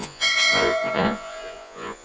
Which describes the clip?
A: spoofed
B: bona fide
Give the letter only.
A